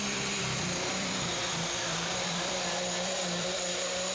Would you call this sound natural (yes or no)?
no